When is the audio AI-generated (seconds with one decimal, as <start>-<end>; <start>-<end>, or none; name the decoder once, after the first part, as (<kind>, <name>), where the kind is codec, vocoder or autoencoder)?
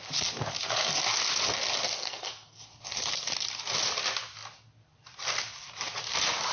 2.0-2.6 (codec, SNAC)